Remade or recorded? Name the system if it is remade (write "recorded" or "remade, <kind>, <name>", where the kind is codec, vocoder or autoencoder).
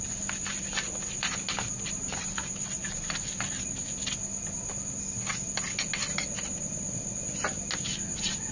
recorded